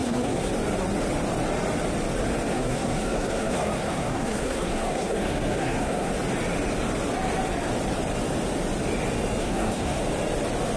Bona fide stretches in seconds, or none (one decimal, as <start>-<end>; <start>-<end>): 0.5-2.5; 6.1-9.4; 10.0-10.8